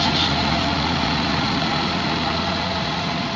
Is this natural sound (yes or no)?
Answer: no